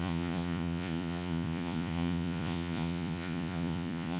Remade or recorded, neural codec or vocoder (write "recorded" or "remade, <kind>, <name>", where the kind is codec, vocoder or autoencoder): remade, vocoder, Vocos